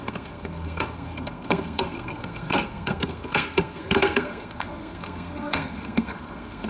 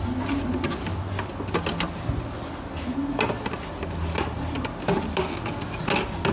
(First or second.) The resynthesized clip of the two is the first